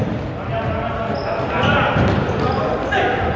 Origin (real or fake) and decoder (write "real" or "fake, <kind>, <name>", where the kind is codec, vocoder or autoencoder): real